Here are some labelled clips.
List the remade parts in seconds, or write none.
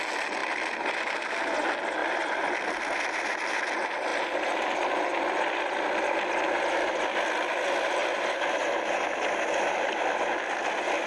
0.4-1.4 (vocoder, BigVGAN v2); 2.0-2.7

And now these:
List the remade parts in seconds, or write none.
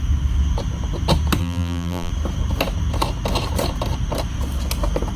1.4-2.1 (vocoder, BigVGAN v2)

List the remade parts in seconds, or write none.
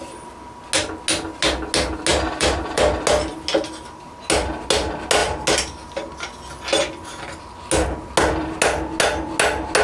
2.1-2.8 (vocoder, BigVGAN v2)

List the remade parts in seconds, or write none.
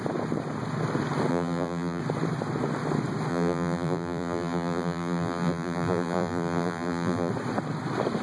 1.3-2.0 (vocoder, BigVGAN v2); 3.3-7.3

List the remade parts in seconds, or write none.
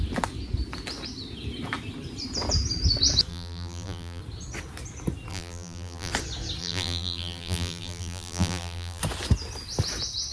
3.3-4.2 (vocoder, BigVGAN v2); 5.3-6.1; 6.6-9.0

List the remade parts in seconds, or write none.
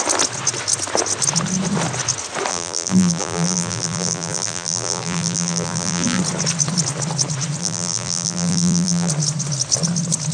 2.5-6.2 (vocoder, BigVGAN v2); 7.6-9.1